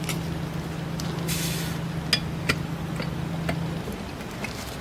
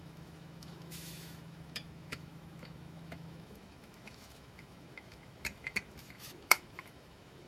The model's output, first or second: second